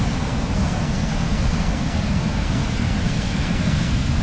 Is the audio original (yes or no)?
no